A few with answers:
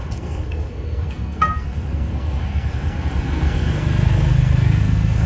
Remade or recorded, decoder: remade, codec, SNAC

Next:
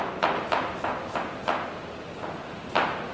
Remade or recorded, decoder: recorded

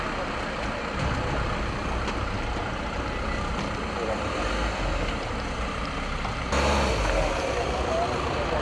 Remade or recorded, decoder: recorded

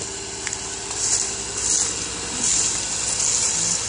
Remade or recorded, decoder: recorded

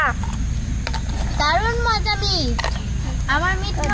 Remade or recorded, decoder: recorded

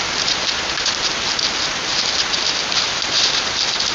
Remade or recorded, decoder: recorded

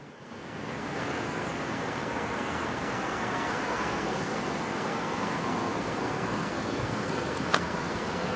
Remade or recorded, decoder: remade, codec, SNAC